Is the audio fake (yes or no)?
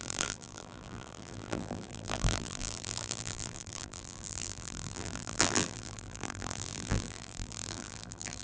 yes